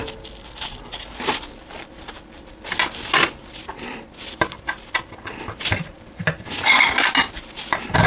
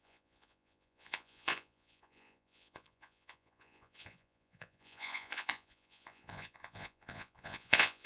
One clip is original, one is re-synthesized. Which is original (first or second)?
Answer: first